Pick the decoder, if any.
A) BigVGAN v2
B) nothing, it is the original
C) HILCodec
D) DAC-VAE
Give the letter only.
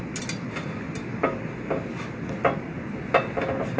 B